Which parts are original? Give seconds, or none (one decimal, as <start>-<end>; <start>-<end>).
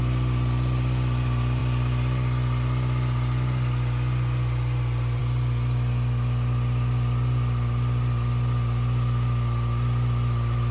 0.0-10.7